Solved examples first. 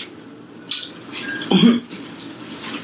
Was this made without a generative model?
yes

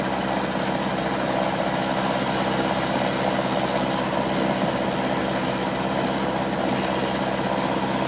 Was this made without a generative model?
yes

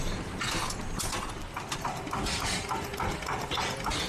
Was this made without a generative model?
yes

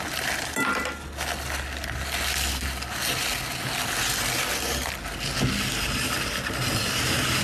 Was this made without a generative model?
yes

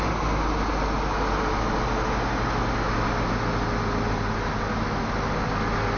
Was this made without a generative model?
yes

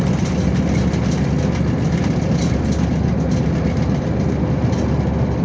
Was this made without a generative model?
yes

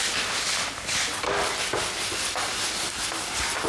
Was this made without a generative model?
no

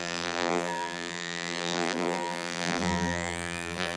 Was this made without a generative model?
no